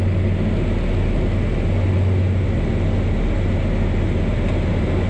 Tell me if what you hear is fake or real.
real